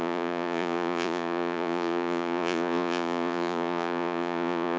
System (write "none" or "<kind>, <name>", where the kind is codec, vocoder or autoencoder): vocoder, Vocos